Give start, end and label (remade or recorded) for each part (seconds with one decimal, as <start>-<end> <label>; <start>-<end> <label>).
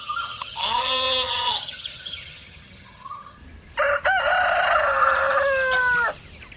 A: 0.0-3.4 remade; 3.4-6.6 recorded